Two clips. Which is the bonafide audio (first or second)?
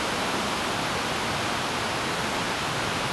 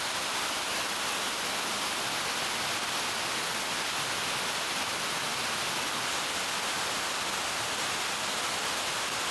second